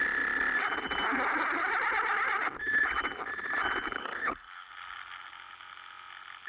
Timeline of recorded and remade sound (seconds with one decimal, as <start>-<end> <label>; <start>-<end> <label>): 0.0-4.0 recorded; 4.0-4.7 remade; 4.7-6.5 recorded